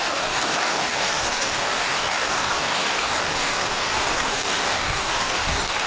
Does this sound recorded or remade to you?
remade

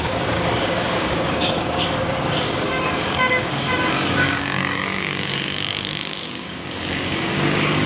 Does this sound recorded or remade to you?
remade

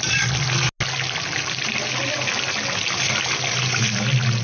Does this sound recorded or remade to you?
recorded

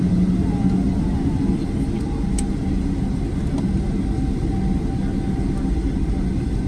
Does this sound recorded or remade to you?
recorded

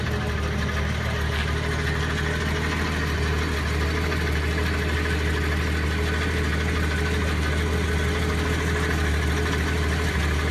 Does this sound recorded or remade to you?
recorded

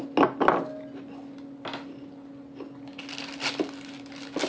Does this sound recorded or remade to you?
recorded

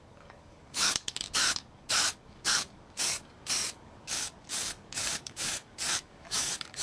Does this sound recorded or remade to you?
remade